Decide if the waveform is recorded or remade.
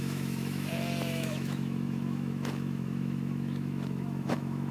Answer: remade